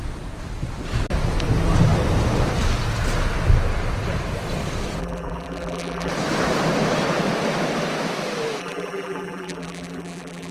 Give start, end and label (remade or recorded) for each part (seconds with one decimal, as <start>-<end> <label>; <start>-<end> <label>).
0.0-5.0 recorded; 5.0-6.1 remade; 6.1-8.6 recorded; 8.6-10.5 remade